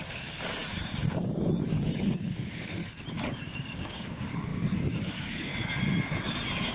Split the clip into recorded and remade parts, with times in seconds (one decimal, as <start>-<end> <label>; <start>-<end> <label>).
0.0-2.8 remade; 2.8-3.5 recorded; 3.5-5.5 remade; 5.5-6.7 recorded

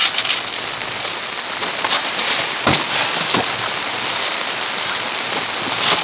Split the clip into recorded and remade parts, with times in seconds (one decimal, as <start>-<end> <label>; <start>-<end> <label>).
0.0-6.0 recorded

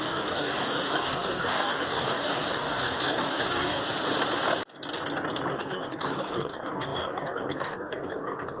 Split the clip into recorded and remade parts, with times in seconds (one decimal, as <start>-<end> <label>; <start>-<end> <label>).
0.0-3.8 remade; 3.8-5.5 recorded; 5.5-8.6 remade

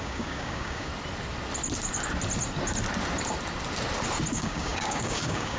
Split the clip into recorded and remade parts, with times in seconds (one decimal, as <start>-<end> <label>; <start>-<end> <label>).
0.0-0.9 remade; 0.9-4.3 recorded; 4.3-5.6 remade

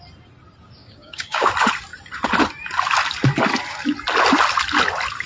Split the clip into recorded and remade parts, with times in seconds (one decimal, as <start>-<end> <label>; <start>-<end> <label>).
0.0-0.8 recorded; 0.8-1.5 remade; 1.5-5.3 recorded